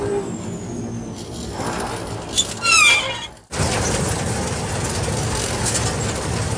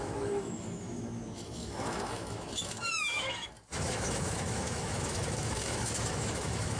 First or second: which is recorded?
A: first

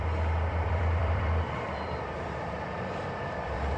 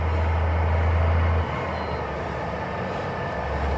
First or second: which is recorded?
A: second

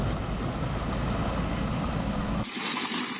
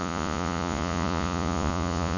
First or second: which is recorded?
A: first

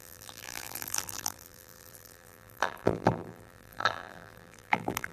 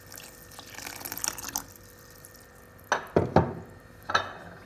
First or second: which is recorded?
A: second